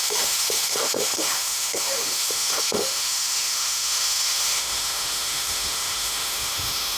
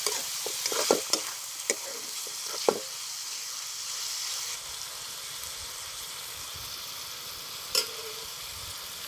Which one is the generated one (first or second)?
first